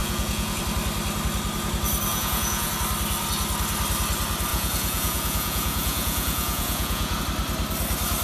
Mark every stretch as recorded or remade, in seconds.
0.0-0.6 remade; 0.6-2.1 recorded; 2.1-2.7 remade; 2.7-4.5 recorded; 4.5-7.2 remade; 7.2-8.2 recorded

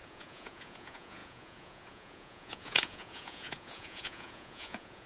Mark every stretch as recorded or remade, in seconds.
0.0-5.1 remade